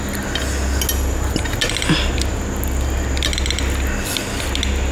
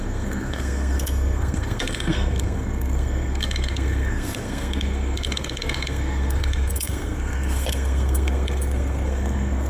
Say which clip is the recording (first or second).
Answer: first